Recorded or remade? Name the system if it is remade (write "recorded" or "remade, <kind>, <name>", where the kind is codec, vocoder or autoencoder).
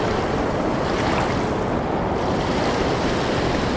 recorded